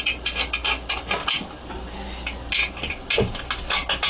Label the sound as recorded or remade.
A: recorded